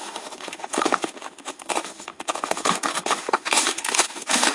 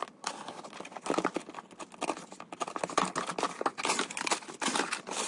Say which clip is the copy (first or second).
first